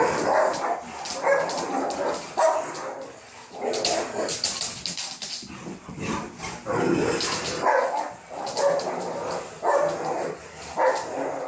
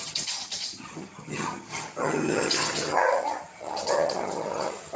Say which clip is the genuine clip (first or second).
first